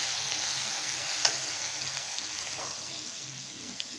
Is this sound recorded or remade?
remade